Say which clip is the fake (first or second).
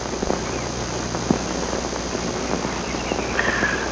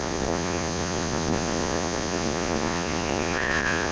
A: second